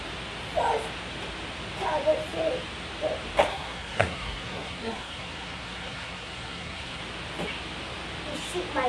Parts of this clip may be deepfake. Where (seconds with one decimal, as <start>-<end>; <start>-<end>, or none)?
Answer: 3.5-7.0